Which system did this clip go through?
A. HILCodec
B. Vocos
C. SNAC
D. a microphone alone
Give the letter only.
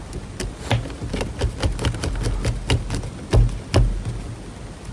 D